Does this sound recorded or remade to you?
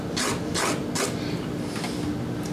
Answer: recorded